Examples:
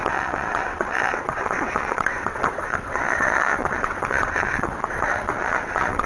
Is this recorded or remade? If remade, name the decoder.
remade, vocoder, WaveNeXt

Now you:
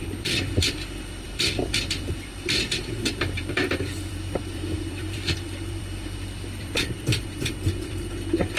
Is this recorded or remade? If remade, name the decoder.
remade, vocoder, BigVGAN v2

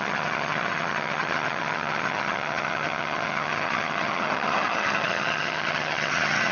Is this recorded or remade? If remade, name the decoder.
remade, vocoder, HiFi-GAN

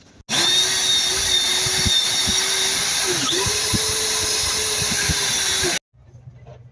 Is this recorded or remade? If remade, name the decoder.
recorded